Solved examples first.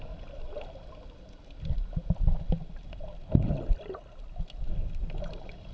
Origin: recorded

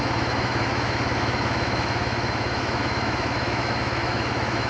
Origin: remade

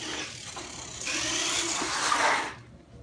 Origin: recorded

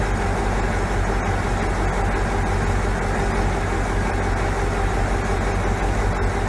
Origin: recorded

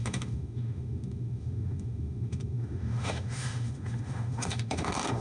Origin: remade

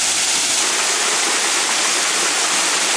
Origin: recorded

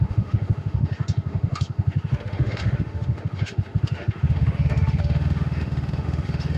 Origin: remade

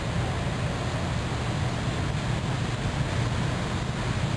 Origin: recorded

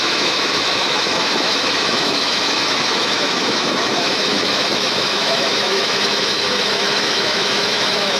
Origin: remade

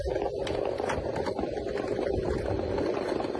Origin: recorded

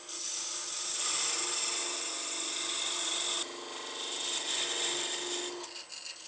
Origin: recorded